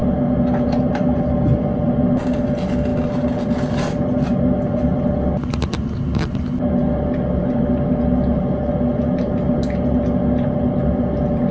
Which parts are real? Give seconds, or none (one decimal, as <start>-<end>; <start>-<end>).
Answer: 0.0-11.5